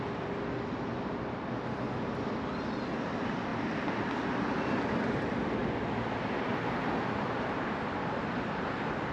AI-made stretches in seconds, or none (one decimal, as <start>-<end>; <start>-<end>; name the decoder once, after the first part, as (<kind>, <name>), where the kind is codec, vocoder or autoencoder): 3.5-4.3 (vocoder, BigVGAN v2); 5.6-8.2